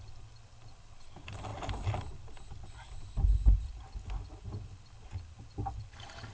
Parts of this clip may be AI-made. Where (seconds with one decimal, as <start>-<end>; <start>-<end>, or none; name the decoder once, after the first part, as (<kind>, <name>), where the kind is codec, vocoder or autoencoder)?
none